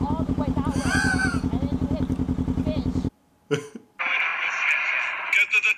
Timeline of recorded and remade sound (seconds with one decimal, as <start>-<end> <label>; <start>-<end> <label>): 0.0-5.8 recorded